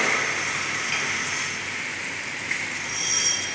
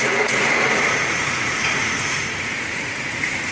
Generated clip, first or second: second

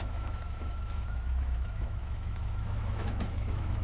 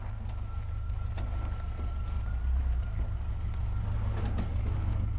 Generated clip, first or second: first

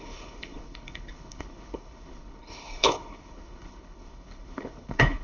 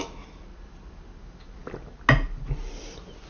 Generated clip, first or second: first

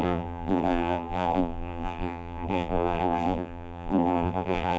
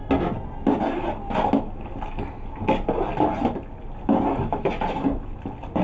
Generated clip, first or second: first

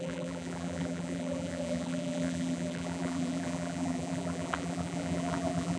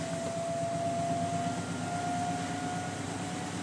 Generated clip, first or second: first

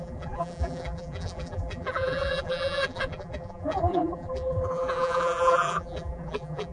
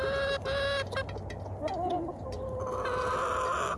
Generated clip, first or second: first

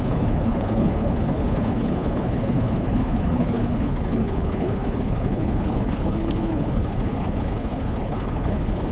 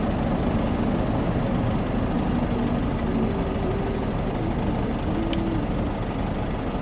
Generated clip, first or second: first